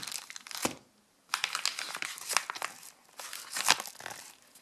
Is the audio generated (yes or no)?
no